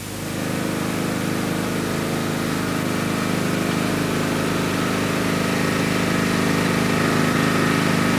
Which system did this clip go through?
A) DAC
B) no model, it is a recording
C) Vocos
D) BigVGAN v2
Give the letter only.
B